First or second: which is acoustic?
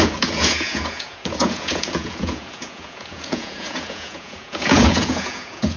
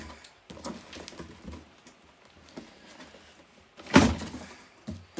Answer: second